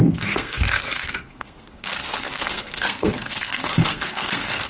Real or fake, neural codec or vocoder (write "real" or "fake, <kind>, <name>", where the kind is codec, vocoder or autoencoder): fake, codec, SNAC